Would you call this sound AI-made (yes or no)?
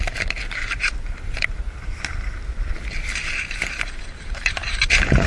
yes